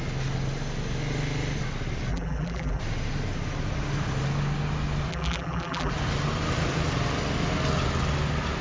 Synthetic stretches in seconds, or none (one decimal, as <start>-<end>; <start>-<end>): 2.1-2.8; 5.1-5.9